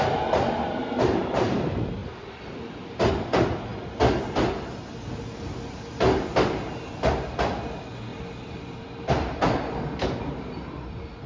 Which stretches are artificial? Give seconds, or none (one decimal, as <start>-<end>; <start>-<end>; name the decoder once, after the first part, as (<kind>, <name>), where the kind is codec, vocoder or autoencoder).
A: 8.1-9.4 (vocoder, BigVGAN v2)